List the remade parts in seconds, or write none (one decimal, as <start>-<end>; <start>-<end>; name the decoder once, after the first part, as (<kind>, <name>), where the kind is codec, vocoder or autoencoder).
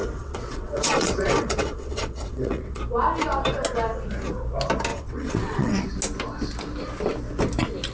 0.0-2.8 (vocoder, WaveNeXt); 4.9-5.8